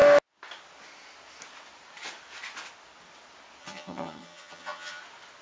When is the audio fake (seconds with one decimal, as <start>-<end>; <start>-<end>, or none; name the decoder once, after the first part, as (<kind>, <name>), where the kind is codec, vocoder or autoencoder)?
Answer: 3.6-5.0 (vocoder, HiFi-GAN)

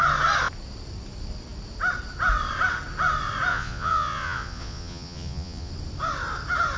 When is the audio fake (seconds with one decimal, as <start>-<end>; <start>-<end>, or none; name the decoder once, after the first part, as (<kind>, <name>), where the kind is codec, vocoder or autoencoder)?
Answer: 3.5-5.7 (vocoder, Vocos)

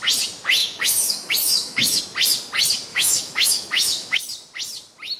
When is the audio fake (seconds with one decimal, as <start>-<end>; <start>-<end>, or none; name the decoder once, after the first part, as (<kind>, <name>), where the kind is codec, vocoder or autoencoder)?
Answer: 0.6-2.0 (autoencoder, DAC-VAE); 2.9-4.2

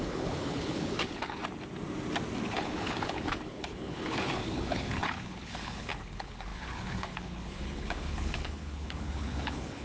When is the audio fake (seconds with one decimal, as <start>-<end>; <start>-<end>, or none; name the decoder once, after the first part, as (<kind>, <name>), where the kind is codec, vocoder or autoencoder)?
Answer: 0.0-1.4 (codec, HILCodec); 2.5-9.8

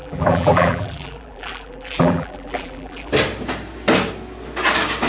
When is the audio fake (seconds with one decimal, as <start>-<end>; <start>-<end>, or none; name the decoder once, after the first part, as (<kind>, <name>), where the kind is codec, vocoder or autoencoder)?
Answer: 0.0-3.1 (vocoder, BigVGAN v2)